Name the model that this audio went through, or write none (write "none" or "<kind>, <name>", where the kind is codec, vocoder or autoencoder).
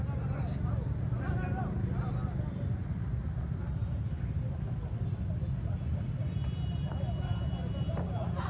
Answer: none